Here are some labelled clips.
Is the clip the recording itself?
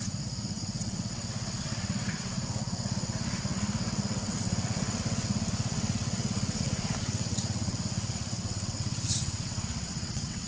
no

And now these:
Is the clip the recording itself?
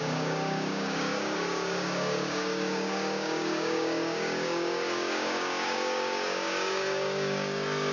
no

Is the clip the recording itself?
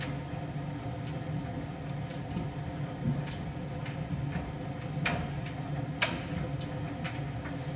yes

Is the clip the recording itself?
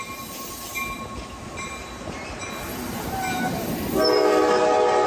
yes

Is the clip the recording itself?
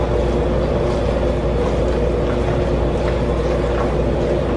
yes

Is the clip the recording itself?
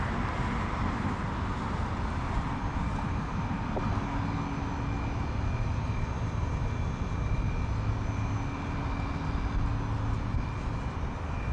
yes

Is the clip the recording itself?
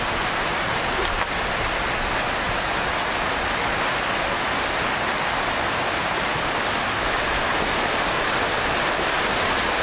yes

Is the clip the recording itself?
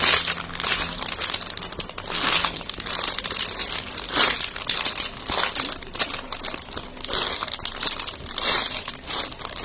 yes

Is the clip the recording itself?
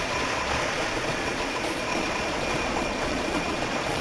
no